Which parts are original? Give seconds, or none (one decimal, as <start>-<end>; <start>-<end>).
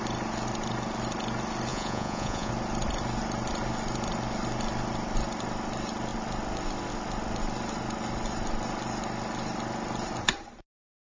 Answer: 0.0-1.7; 2.5-11.2